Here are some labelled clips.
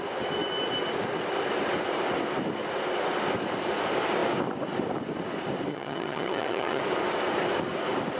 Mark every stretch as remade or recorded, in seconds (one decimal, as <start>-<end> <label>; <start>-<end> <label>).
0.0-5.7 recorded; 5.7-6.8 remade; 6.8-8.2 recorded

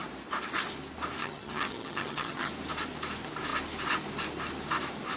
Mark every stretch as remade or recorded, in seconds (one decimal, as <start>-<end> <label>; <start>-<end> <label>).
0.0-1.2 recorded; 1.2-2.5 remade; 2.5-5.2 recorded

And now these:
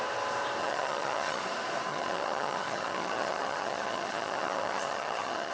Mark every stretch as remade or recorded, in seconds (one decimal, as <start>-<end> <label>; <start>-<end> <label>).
0.0-0.6 recorded; 0.6-1.4 remade; 1.4-1.9 recorded; 1.9-5.5 remade